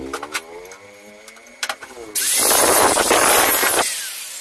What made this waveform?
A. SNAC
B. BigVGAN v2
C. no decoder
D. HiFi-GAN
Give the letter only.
C